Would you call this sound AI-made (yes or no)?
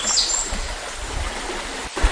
no